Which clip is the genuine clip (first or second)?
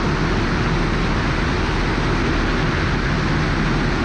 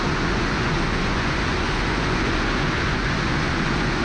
first